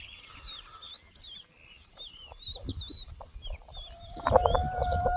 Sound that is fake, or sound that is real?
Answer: real